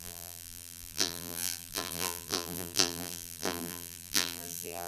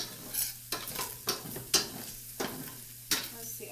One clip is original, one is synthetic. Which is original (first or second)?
second